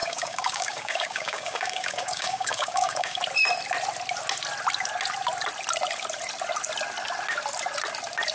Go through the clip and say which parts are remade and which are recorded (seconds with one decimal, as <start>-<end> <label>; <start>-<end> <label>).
0.0-3.2 remade; 3.2-8.3 recorded